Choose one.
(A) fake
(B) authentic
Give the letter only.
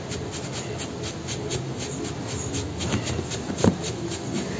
B